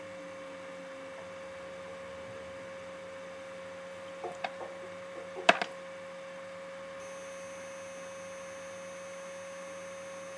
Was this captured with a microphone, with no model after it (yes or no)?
yes